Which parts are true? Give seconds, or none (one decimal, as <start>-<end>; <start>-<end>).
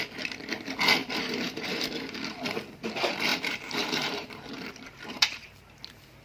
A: 0.0-1.0; 2.2-3.3; 5.7-6.2